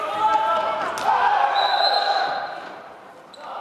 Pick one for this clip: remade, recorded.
recorded